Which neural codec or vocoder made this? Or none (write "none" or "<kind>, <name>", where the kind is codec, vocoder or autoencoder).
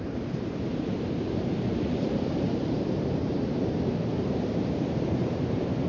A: vocoder, BigVGAN v2